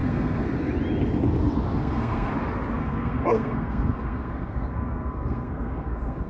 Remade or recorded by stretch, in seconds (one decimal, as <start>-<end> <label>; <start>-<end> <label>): 0.0-0.5 remade; 0.5-1.8 recorded; 1.8-2.3 remade; 2.3-2.8 recorded; 2.8-6.3 remade